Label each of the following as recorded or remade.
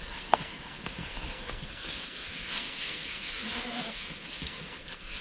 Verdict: remade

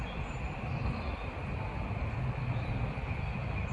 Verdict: recorded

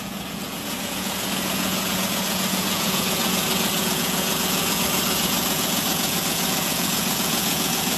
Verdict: remade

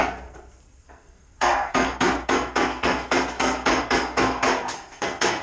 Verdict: remade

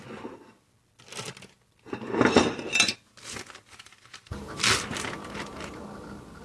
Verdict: recorded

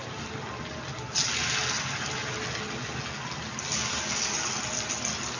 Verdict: recorded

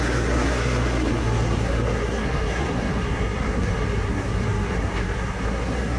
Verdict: remade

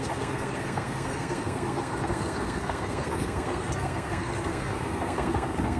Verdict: remade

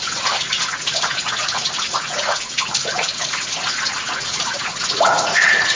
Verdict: remade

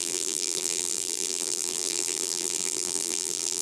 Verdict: remade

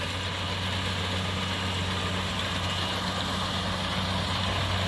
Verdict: recorded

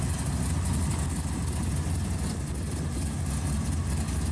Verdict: recorded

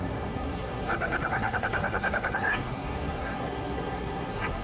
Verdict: remade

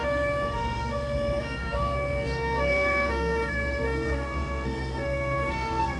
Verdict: remade